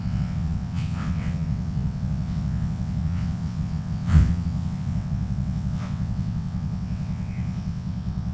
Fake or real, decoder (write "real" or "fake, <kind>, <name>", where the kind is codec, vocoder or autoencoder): fake, vocoder, WaveNeXt